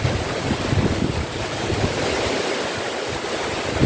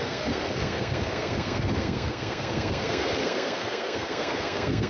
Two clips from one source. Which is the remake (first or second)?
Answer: second